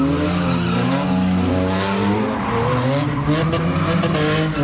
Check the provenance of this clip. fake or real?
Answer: real